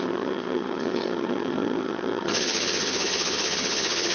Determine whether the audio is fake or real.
fake